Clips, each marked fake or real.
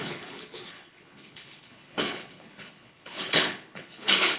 fake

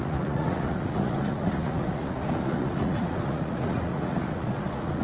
fake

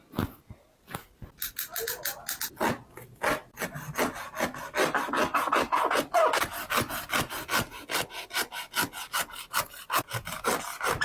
real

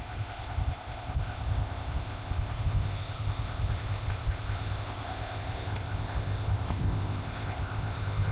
fake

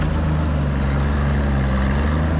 real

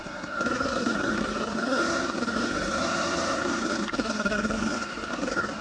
fake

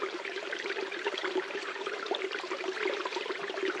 fake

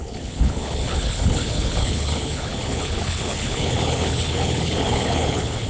fake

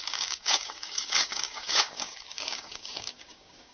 fake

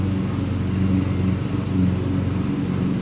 real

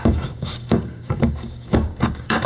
fake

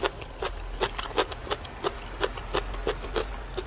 real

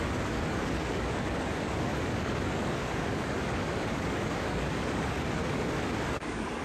fake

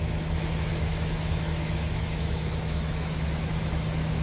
fake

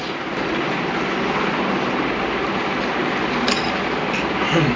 real